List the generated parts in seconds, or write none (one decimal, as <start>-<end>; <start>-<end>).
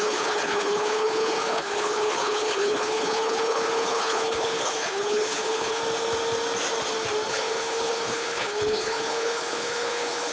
0.0-5.8; 7.3-10.3